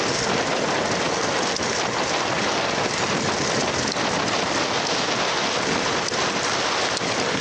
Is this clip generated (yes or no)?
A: no